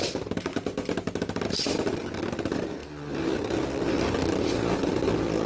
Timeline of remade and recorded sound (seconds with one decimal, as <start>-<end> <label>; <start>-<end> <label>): 0.0-5.5 recorded